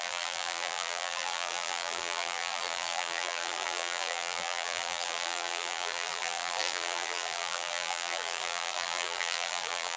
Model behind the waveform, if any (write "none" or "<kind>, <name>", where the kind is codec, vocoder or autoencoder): vocoder, BigVGAN v2